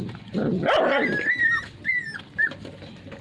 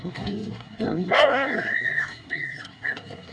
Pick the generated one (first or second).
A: second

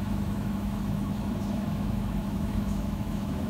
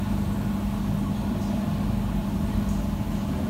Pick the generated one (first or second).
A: first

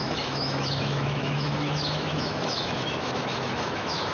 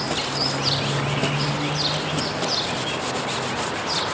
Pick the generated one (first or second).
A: first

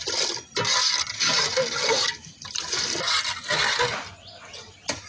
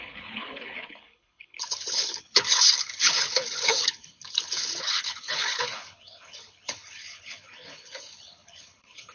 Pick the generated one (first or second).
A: second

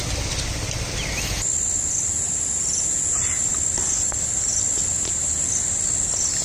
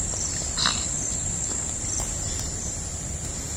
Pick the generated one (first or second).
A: second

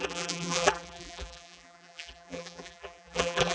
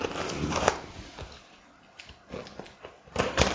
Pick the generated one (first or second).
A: first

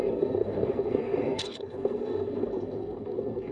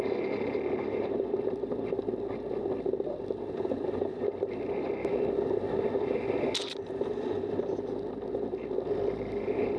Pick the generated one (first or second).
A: first